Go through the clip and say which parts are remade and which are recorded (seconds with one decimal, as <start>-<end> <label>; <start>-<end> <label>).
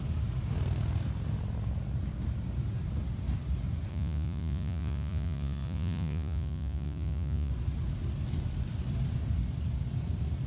0.0-3.9 recorded; 3.9-7.5 remade; 7.5-10.5 recorded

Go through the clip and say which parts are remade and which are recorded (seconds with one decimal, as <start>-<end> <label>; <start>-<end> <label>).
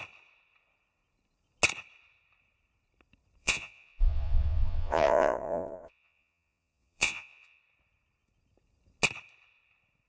0.0-3.4 recorded; 3.4-7.6 remade; 7.6-10.1 recorded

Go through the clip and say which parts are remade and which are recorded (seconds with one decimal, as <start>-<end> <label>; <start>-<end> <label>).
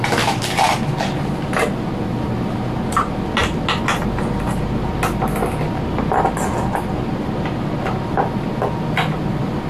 0.0-9.7 recorded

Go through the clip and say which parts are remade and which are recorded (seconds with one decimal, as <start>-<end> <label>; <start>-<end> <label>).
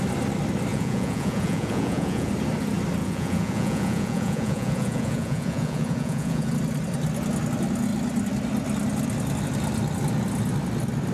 0.0-0.7 recorded; 0.7-2.3 remade; 2.3-3.0 recorded; 3.0-6.5 remade; 6.5-11.1 recorded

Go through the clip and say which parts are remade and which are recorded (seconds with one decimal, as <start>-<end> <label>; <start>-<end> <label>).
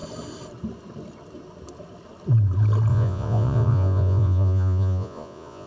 0.0-2.9 recorded; 2.9-5.7 remade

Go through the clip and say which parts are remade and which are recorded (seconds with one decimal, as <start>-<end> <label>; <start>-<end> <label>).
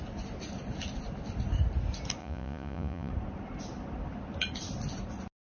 0.0-2.2 recorded; 2.2-3.1 remade; 3.1-5.4 recorded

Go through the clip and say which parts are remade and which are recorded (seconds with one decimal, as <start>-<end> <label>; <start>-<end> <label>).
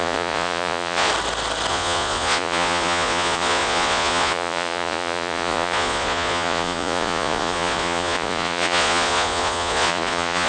0.0-1.1 remade; 1.1-1.7 recorded; 1.7-10.5 remade